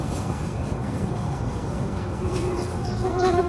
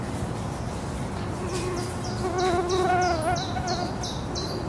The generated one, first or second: first